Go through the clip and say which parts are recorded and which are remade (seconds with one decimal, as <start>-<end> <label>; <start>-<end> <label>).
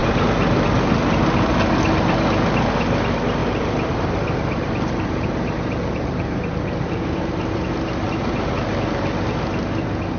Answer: 0.0-0.9 remade; 0.9-3.4 recorded; 3.4-8.5 remade; 8.5-10.2 recorded